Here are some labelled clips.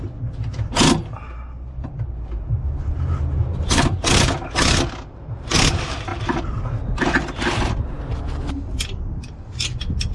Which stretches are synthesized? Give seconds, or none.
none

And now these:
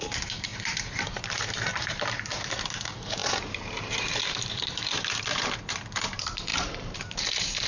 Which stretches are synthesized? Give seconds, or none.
0.0-7.7 (vocoder, BigVGAN v2)